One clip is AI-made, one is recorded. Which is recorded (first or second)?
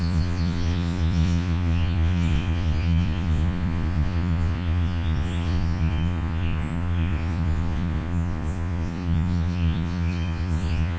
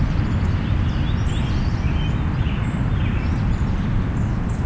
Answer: second